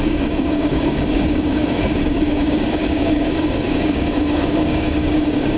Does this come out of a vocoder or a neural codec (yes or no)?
yes